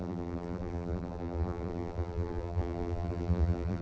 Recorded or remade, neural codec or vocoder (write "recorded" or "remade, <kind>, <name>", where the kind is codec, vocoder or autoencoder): remade, vocoder, BigVGAN v2